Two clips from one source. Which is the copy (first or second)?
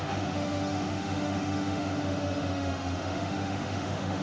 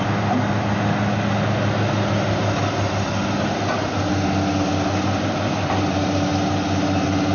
first